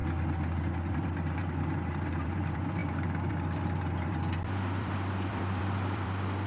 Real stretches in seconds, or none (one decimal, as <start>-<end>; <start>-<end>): 0.0-0.9